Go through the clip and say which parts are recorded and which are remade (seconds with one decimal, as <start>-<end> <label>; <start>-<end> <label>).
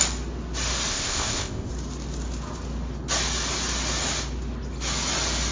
0.0-0.9 recorded; 0.9-1.7 remade; 1.7-5.5 recorded